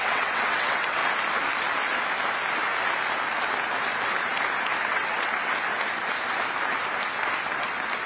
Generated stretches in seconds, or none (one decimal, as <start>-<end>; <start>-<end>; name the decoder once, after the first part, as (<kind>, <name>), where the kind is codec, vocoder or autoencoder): 0.0-1.0 (vocoder, WaveNeXt); 4.9-5.5

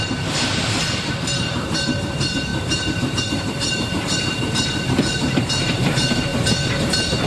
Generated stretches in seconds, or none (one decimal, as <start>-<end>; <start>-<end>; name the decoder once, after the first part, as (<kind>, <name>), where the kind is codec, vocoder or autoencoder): 0.0-7.3 (vocoder, BigVGAN v2)

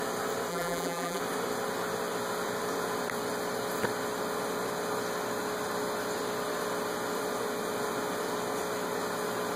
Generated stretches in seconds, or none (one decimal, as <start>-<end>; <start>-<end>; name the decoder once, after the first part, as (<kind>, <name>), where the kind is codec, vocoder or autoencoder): 0.5-1.2 (vocoder, BigVGAN v2)

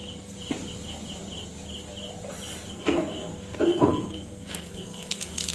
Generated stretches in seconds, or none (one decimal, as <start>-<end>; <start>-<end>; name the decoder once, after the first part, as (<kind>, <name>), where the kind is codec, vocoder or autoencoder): 2.7-5.5 (codec, SNAC)

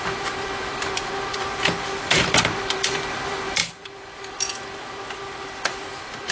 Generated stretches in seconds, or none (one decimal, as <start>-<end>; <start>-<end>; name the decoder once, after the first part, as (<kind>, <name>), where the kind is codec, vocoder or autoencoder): 0.0-6.3 (vocoder, BigVGAN v2)

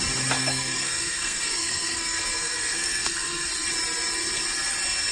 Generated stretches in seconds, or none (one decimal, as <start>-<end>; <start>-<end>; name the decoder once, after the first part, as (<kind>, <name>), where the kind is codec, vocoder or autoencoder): 0.4-3.5 (codec, SNAC)